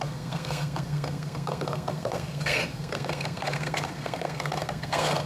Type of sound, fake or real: fake